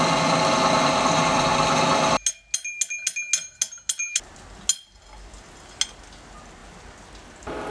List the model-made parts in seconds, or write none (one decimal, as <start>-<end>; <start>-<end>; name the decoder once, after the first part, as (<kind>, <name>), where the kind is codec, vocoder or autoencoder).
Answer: none